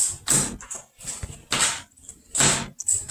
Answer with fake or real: real